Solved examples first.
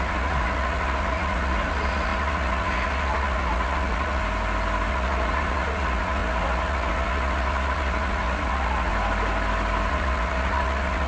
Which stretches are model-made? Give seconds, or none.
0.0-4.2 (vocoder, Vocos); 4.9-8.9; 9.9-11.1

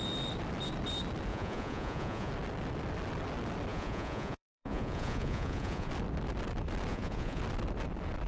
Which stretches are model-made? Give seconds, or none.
1.3-2.3 (vocoder, Vocos); 3.7-5.9; 6.9-7.4

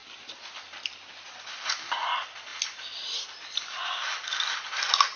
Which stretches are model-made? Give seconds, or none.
none

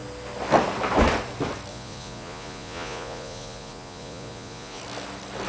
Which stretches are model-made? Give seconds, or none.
1.7-4.8 (vocoder, Vocos)